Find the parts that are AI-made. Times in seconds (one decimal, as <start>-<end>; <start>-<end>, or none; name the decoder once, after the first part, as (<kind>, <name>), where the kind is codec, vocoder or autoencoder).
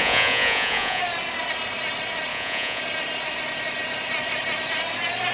0.0-1.0 (vocoder, Vocos); 2.3-2.8